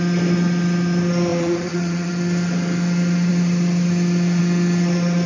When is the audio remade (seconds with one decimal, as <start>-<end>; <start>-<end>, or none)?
1.3-2.1